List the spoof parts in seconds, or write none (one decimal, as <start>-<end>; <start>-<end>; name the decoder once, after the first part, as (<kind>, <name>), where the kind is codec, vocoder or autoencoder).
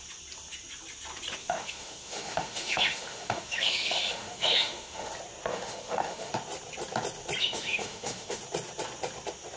1.4-5.1 (autoencoder, DAC-VAE); 5.5-6.3; 7.4-8.4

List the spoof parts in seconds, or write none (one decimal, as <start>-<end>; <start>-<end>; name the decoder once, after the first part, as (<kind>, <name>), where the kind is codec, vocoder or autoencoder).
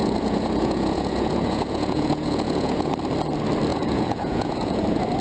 0.0-2.9 (vocoder, Vocos); 3.7-4.8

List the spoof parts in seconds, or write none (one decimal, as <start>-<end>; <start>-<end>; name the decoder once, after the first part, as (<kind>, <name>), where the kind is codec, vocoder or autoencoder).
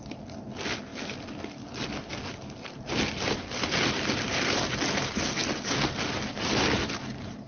0.9-4.6 (vocoder, BigVGAN v2); 5.4-6.9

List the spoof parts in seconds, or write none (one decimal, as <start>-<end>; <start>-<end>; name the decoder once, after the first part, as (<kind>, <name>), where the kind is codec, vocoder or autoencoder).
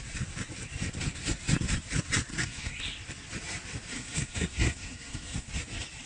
2.3-2.8 (codec, SNAC); 3.9-5.5